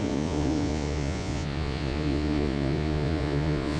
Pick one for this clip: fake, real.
fake